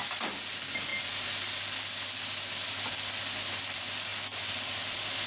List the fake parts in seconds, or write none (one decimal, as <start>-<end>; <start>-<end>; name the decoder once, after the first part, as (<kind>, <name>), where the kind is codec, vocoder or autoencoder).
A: none